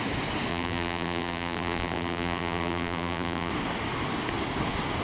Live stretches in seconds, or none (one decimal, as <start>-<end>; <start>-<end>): 0.0-0.5; 3.5-5.0